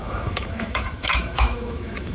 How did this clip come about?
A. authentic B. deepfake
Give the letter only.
B